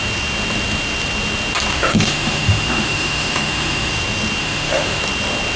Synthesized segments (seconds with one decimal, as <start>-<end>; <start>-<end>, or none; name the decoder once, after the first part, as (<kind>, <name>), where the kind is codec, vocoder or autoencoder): 1.7-3.9 (autoencoder, DAC-VAE); 4.4-5.0